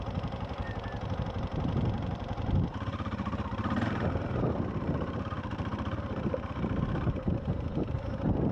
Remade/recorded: remade